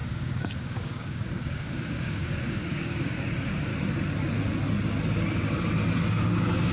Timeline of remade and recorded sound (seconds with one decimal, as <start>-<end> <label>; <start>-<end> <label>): 0.0-3.7 remade; 3.7-6.1 recorded; 6.1-6.7 remade